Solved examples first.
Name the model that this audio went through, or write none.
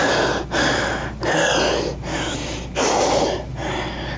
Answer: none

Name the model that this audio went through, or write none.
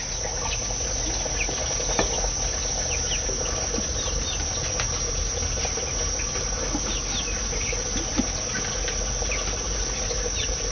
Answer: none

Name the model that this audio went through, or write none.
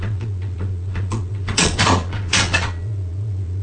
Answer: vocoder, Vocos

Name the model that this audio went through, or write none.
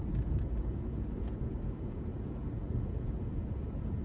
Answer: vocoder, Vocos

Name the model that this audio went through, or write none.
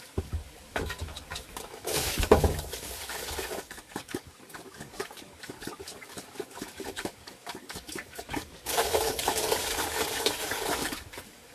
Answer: codec, DAC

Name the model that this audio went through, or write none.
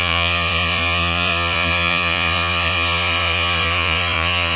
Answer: vocoder, Vocos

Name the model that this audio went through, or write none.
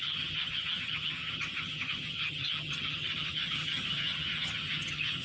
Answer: vocoder, HiFi-GAN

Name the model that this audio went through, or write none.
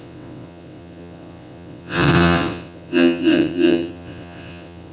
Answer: vocoder, WaveNeXt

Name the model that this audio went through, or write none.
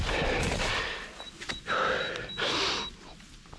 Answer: none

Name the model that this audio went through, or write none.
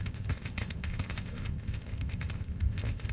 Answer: codec, ZipCodec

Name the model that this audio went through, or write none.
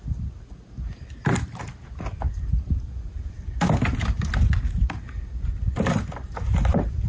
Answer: none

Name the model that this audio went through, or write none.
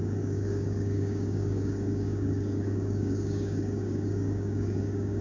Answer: codec, DAC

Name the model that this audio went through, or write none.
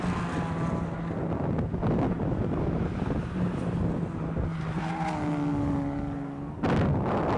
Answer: none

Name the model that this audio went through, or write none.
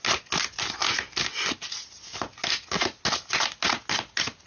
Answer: none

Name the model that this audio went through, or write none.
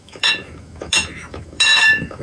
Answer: autoencoder, DAC-VAE